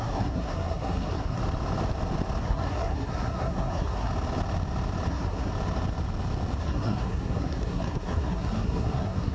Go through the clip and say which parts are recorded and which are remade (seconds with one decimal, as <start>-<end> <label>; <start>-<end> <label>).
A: 0.0-1.4 remade; 1.4-2.4 recorded; 2.4-4.1 remade; 4.1-5.1 recorded; 5.1-5.5 remade; 5.5-6.6 recorded; 6.6-9.3 remade